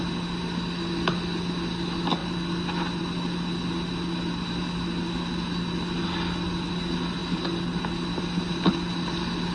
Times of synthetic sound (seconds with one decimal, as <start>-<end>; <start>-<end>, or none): none